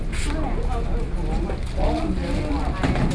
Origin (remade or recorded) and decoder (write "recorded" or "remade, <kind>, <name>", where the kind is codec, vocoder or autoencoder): recorded